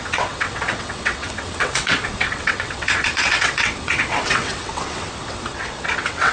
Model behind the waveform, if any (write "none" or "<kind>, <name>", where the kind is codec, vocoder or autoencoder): vocoder, WaveNeXt